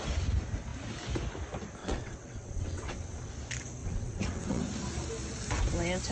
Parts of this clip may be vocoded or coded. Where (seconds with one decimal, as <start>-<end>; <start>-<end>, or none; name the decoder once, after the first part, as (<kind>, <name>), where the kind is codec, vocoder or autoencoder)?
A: 1.8-3.3 (vocoder, WaveNeXt); 3.8-4.6